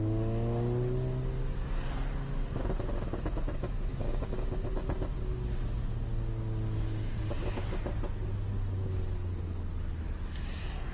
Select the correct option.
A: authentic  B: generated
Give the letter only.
A